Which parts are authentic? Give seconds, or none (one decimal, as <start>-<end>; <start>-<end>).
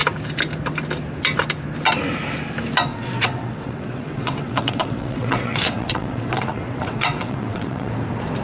0.0-2.9; 7.9-8.4